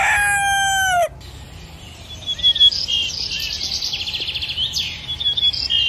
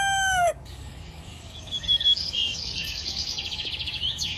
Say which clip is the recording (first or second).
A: first